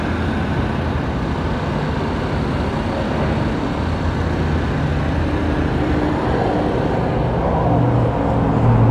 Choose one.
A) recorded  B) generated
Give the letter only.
A